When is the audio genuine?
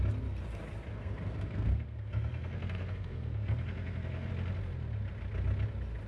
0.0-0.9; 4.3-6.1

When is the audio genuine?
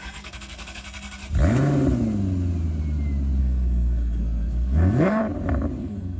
1.2-3.4; 5.2-5.8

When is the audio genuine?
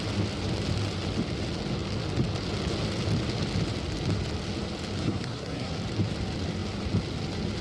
0.0-5.0; 5.7-7.6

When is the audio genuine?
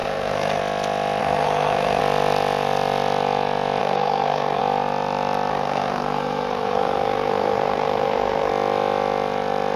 0.6-1.2; 2.0-3.8; 4.6-5.5; 8.5-9.8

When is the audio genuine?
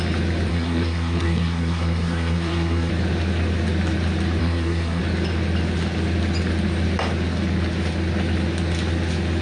0.0-0.5; 2.9-4.4; 5.0-9.4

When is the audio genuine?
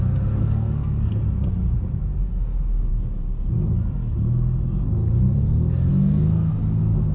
0.0-0.4; 1.1-2.1; 2.9-5.9; 6.5-7.1